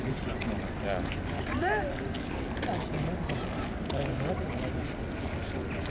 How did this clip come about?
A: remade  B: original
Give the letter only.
B